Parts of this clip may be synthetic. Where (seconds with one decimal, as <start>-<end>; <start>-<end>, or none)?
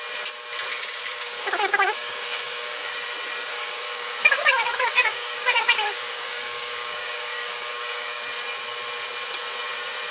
0.7-2.9; 3.5-8.2